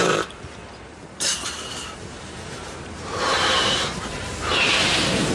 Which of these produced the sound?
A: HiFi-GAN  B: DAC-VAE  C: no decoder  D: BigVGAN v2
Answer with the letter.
D